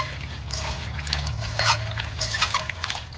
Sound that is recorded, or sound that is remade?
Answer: recorded